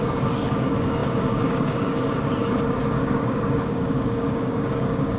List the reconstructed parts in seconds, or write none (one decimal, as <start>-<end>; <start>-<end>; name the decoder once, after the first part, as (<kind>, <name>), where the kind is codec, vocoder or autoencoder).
0.0-5.2 (codec, DAC)